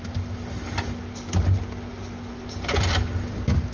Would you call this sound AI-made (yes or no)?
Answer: no